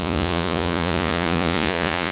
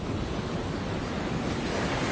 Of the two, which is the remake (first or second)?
first